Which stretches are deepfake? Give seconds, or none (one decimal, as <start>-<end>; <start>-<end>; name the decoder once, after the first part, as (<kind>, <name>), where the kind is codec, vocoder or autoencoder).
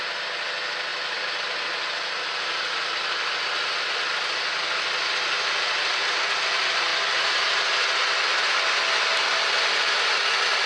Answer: none